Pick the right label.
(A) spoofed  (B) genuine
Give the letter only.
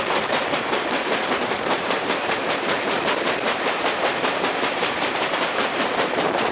A